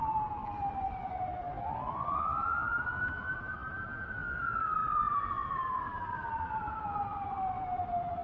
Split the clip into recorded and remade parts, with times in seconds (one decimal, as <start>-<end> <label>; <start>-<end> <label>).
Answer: 0.0-8.2 recorded